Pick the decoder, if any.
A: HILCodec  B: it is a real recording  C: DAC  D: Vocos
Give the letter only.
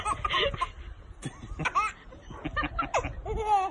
B